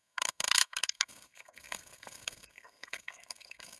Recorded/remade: remade